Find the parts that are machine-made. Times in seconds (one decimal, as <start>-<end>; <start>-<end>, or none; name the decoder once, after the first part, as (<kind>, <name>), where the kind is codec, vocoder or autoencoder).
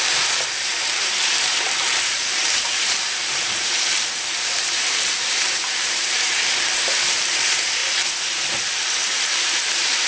0.0-10.1 (vocoder, BigVGAN v2)